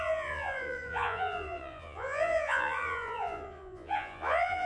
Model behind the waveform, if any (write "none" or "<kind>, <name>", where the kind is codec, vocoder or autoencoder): vocoder, Vocos